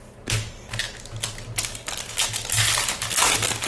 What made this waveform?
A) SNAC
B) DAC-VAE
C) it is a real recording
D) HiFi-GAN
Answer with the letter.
C